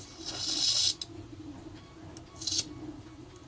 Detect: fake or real real